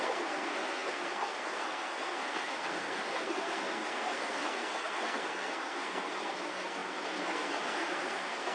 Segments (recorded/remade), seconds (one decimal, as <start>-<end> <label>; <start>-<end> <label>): 0.0-8.5 remade